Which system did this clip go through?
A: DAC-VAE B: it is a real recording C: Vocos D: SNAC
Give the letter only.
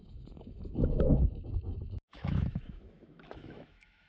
A